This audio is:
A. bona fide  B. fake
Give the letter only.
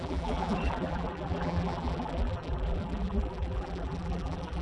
B